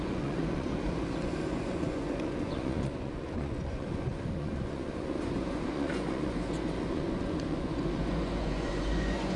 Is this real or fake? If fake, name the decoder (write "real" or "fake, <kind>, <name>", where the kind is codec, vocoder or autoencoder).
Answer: fake, vocoder, Vocos